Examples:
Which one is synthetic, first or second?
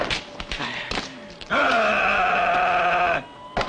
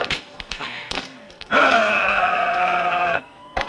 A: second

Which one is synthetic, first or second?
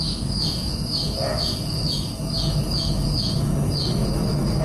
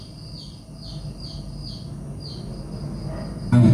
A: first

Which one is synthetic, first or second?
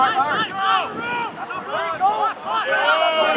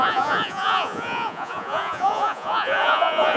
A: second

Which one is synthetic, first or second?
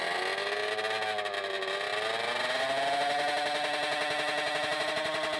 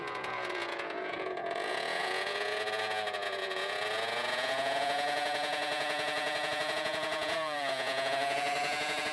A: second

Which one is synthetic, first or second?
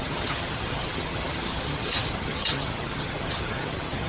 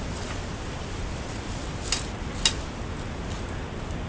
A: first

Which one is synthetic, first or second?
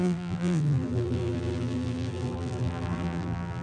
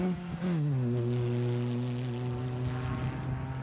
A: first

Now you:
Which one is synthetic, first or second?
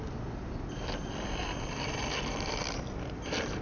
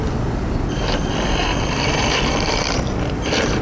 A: second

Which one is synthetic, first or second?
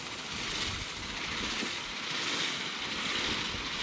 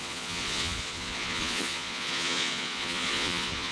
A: second